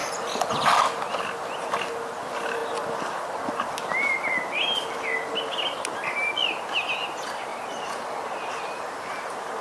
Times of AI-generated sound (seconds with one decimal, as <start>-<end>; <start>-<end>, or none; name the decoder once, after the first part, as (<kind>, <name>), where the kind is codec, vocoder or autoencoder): none